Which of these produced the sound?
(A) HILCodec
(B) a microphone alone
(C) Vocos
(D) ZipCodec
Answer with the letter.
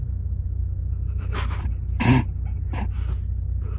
B